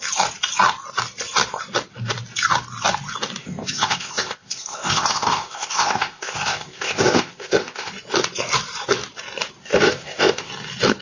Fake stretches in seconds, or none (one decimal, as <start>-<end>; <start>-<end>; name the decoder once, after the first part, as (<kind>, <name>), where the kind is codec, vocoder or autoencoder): 3.4-7.9 (codec, ZipCodec); 9.6-10.5